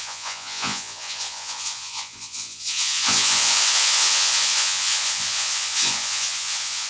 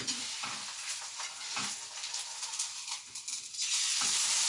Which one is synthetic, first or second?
first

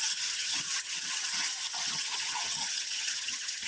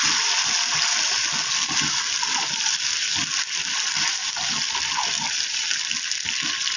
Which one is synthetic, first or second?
first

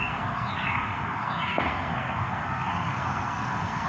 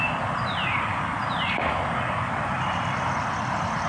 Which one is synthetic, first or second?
first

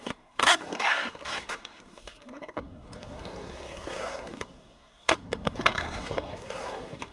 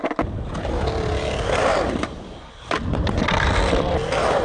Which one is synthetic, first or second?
first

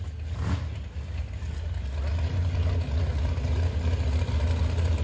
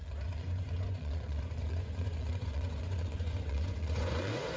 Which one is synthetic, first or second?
second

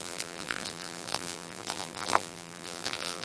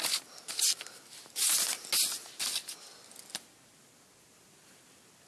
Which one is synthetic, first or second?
first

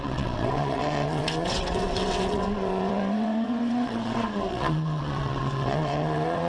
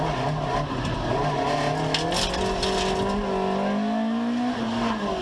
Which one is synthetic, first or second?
first